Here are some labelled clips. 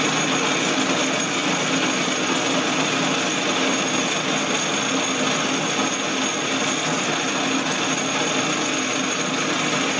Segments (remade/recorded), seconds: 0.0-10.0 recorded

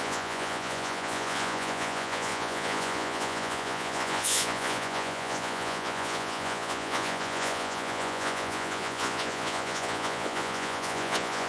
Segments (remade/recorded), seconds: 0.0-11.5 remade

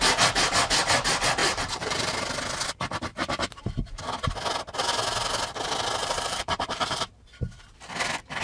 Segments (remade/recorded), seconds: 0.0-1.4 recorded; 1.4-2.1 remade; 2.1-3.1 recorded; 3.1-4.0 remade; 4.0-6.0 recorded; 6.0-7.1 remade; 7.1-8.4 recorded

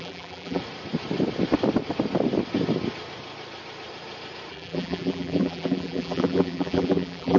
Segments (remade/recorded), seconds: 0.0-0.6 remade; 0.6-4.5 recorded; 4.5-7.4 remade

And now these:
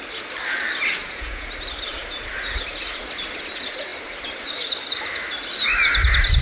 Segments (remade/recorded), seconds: 0.0-1.0 recorded; 1.0-1.5 remade; 1.5-6.4 recorded

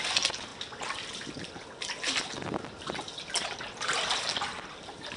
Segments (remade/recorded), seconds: 0.0-4.5 recorded; 4.5-5.2 remade

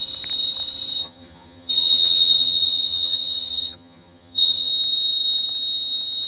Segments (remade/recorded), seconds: 0.0-1.0 recorded; 1.0-4.7 remade; 4.7-6.3 recorded

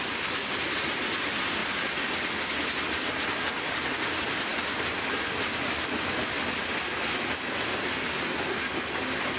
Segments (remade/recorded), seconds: 0.0-9.4 recorded